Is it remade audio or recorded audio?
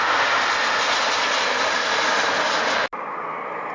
recorded